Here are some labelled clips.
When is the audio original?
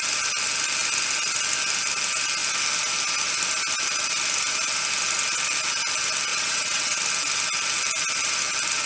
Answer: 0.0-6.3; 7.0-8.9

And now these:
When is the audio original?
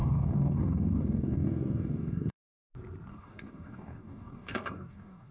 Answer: 2.6-3.1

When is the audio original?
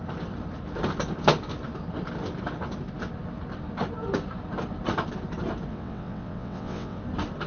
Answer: 0.0-5.7; 7.0-7.5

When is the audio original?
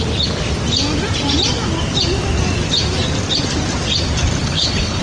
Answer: 0.0-4.4